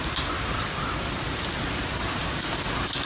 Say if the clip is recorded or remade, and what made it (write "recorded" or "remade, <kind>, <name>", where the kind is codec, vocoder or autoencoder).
remade, vocoder, BigVGAN v2